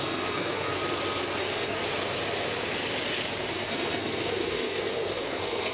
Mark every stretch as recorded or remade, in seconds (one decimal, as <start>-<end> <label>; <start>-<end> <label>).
0.0-0.8 remade; 0.8-1.4 recorded; 1.4-1.8 remade; 1.8-3.5 recorded; 3.5-5.7 remade